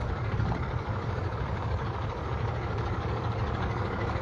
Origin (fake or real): fake